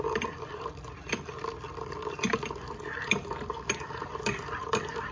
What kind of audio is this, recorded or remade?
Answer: recorded